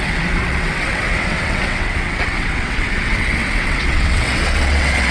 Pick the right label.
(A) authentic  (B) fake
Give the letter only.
B